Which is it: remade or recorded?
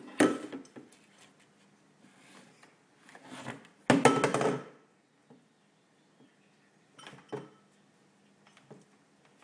recorded